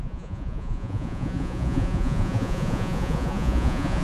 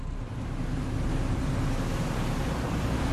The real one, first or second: second